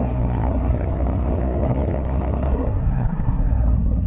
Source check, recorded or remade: remade